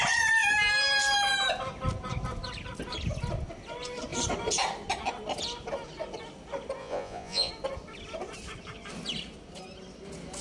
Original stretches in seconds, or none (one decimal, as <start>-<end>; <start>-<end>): 0.0-6.8; 7.5-10.4